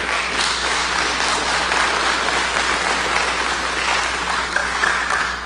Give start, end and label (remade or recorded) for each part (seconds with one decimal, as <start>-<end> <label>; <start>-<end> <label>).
0.0-0.8 remade; 0.8-4.1 recorded; 4.1-5.5 remade